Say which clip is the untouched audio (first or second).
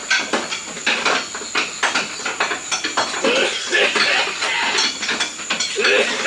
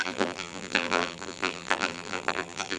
first